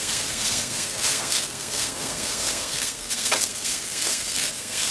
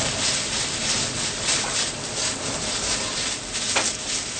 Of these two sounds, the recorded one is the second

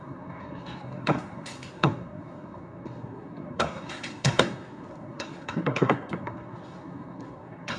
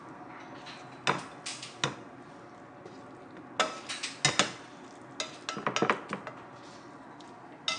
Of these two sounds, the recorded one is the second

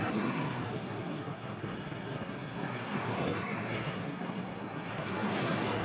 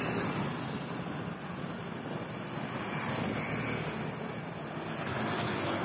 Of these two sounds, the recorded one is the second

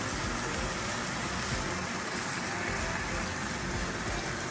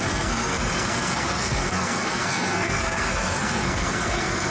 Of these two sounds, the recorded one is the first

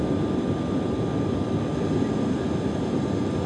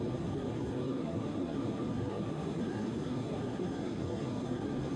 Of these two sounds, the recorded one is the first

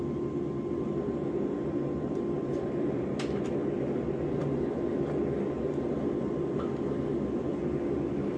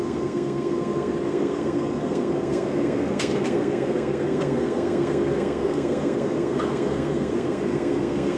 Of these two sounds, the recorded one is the first